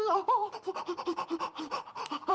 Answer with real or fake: fake